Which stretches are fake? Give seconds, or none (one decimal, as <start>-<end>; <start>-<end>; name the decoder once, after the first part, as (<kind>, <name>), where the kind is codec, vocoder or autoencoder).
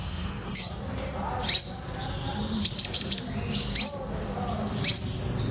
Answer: 0.0-0.7 (codec, SNAC)